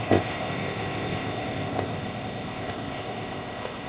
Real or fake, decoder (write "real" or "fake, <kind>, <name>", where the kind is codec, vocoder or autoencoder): fake, codec, ZipCodec